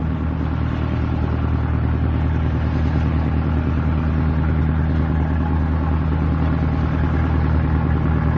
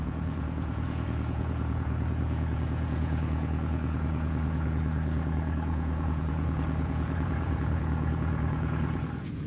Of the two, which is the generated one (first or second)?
second